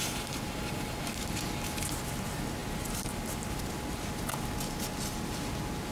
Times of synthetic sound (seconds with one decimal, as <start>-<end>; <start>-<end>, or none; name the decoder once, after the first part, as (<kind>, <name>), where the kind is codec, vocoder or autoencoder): none